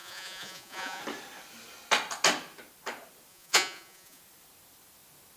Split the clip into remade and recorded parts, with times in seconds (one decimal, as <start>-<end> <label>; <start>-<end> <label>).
0.0-1.0 remade; 1.0-3.3 recorded; 3.3-4.2 remade; 4.2-5.4 recorded